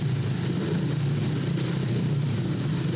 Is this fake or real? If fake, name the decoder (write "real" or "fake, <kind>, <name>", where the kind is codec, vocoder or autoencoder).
fake, vocoder, BigVGAN v2